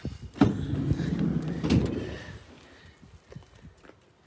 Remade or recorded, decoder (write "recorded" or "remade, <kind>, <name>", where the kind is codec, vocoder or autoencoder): recorded